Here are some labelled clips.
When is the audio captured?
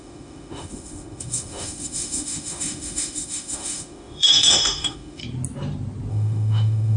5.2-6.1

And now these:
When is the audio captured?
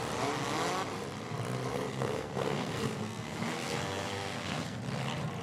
0.0-1.7; 4.8-5.4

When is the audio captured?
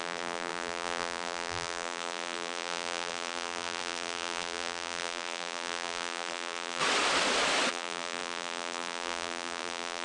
6.8-7.7